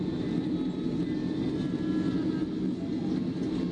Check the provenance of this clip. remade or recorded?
recorded